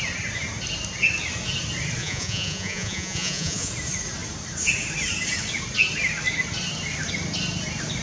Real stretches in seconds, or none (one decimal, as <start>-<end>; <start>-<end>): 0.0-2.0; 3.7-8.0